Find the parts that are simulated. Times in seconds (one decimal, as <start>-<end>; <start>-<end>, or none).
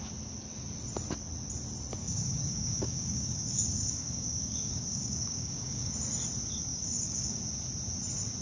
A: 2.0-5.9; 6.7-7.4